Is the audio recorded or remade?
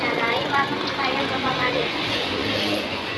remade